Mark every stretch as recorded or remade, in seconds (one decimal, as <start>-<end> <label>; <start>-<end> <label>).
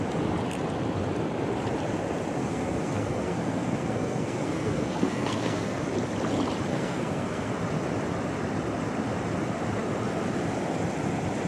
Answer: 0.0-2.4 recorded; 2.4-5.8 remade; 5.8-6.7 recorded; 6.7-7.5 remade; 7.5-11.5 recorded